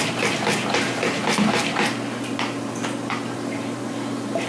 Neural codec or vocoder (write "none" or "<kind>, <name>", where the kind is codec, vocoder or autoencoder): none